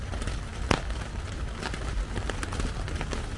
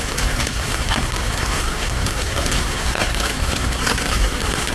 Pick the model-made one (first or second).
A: second